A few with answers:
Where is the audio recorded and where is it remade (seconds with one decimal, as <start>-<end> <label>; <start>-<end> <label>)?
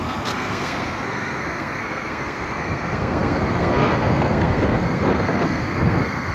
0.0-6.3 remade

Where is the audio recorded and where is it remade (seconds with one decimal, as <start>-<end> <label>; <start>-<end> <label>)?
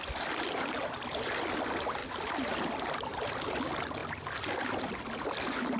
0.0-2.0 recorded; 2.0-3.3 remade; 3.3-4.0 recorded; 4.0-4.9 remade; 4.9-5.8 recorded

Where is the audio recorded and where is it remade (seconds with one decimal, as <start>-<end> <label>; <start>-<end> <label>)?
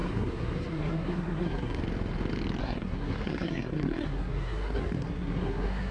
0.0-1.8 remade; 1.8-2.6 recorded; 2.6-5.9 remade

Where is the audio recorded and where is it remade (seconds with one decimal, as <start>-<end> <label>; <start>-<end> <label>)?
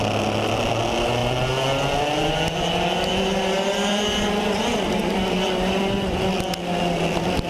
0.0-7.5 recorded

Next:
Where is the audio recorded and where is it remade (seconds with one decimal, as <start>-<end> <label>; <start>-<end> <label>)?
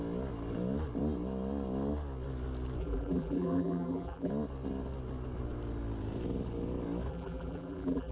0.0-2.8 recorded; 2.8-4.3 remade; 4.3-7.1 recorded; 7.1-8.1 remade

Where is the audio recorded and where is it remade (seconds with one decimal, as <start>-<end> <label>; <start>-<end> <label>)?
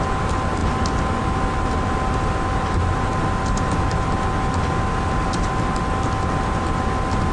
0.0-7.3 recorded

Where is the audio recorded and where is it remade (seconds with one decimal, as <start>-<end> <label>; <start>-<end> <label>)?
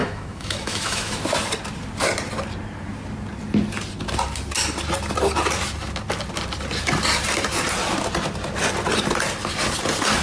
0.0-1.2 remade; 1.2-10.2 recorded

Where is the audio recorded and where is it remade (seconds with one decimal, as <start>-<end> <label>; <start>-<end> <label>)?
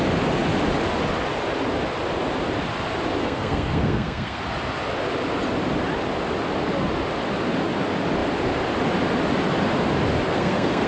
0.0-3.2 recorded; 3.2-4.4 remade; 4.4-10.3 recorded; 10.3-10.9 remade